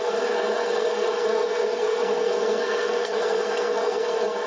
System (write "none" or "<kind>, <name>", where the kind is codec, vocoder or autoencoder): codec, SNAC